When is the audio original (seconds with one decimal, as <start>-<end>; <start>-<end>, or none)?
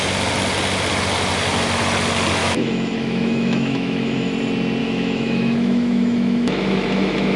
0.0-2.4; 4.3-4.8